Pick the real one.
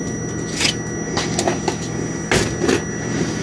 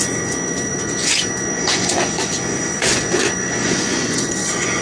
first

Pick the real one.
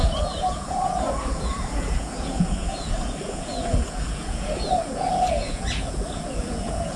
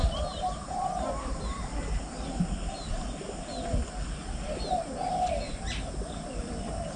second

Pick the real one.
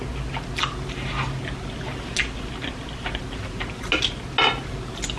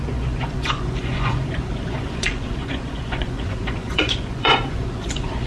first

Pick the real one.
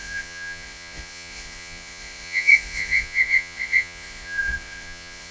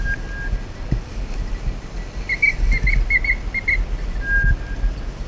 second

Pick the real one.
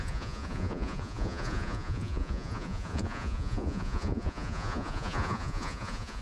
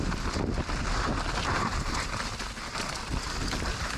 second